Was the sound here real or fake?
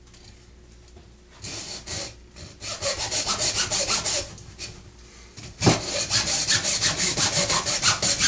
real